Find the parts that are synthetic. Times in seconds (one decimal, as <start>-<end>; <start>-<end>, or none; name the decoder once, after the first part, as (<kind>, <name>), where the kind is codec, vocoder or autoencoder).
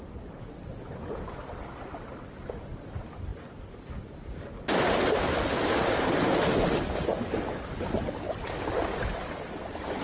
none